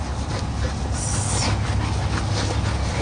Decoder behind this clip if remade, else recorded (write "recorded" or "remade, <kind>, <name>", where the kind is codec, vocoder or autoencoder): recorded